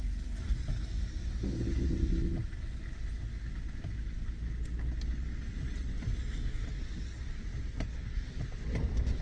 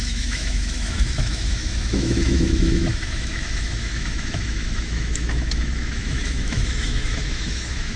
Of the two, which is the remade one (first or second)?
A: second